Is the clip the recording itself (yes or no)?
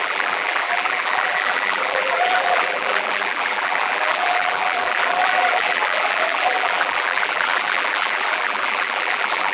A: no